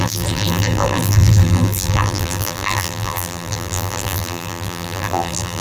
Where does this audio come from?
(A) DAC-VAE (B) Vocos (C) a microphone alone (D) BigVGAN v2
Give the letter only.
D